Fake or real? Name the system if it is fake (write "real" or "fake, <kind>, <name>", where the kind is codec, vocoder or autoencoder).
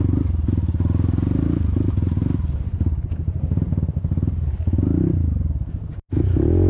real